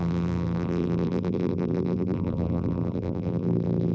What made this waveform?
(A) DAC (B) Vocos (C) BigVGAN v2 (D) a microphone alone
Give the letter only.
C